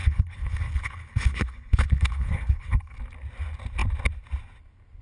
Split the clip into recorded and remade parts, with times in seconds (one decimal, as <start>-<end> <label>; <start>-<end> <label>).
0.0-3.0 remade; 3.0-5.0 recorded